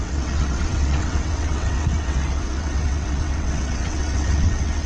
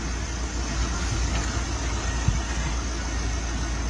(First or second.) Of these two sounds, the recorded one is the second